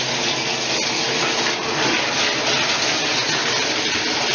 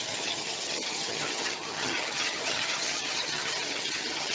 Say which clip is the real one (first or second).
first